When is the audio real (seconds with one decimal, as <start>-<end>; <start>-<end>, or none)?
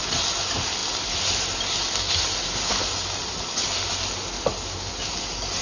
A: 0.0-5.6